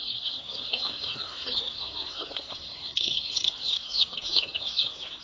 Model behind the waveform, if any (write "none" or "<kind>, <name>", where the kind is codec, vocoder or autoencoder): codec, SNAC